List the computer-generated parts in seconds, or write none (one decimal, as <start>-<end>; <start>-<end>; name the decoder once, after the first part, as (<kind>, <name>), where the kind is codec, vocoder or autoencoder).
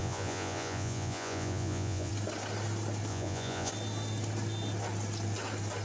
0.0-2.1 (vocoder, Vocos); 3.1-3.7